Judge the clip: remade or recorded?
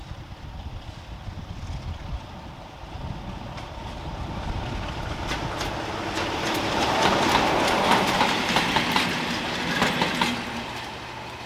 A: recorded